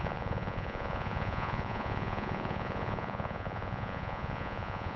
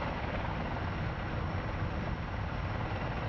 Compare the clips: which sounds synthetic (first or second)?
first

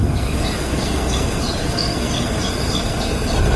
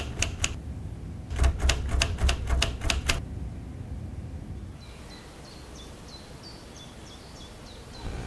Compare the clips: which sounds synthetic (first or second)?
first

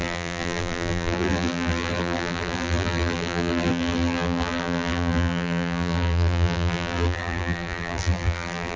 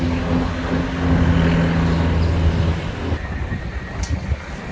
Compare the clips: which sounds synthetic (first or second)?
first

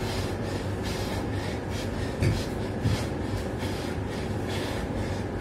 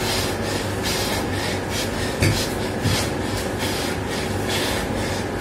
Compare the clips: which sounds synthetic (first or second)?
first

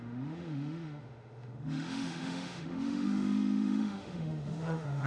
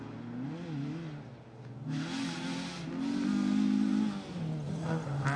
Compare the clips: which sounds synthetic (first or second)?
first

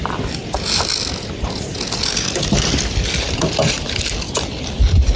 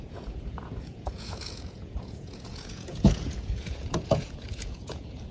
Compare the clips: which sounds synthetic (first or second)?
second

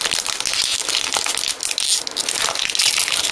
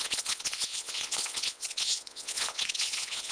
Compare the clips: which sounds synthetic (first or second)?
second